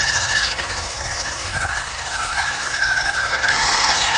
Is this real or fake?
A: fake